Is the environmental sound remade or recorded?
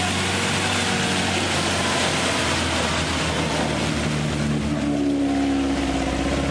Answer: recorded